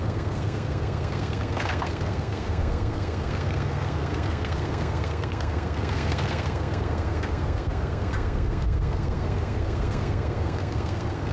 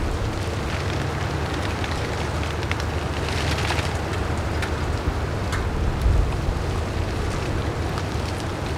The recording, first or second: second